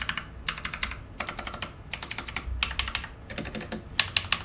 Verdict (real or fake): real